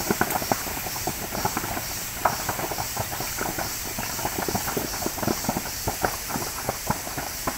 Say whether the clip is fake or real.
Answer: fake